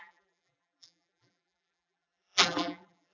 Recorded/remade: remade